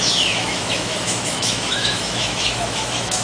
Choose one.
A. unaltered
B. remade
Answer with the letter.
B